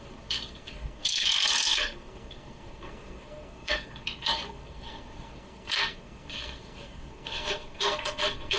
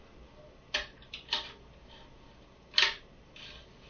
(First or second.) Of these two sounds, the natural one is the second